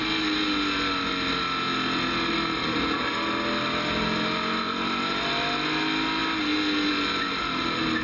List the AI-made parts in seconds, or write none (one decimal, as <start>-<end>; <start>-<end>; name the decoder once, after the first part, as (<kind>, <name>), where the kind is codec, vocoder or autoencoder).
none